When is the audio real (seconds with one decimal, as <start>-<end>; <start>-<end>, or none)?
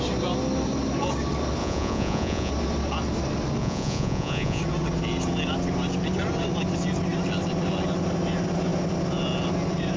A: 0.0-1.6; 2.5-3.6; 4.6-10.0